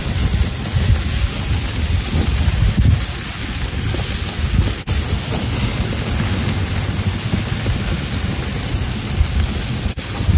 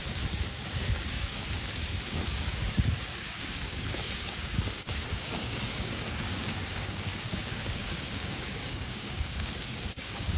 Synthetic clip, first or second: second